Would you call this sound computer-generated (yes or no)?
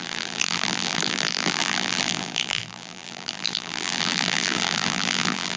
yes